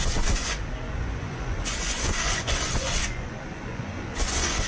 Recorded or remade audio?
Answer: remade